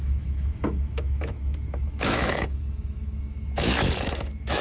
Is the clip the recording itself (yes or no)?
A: no